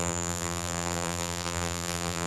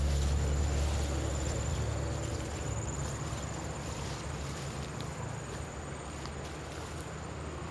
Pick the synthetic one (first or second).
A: first